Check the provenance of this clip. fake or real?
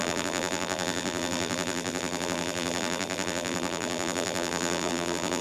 fake